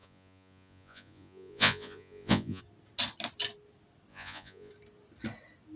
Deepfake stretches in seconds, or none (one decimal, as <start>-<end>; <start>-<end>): 0.0-2.6; 4.1-4.7

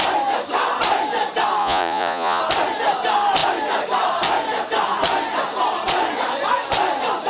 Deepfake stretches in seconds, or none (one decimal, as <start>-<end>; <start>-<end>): 1.6-2.4

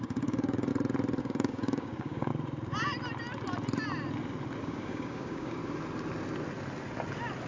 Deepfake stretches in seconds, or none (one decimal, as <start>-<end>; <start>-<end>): 0.0-0.7; 1.2-2.3; 4.6-5.6